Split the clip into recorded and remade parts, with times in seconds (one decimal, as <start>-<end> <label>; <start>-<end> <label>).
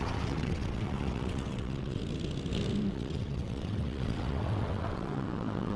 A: 0.0-2.0 remade; 2.0-2.9 recorded; 2.9-5.8 remade